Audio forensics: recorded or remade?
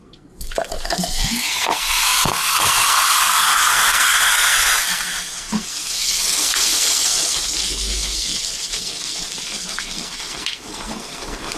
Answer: remade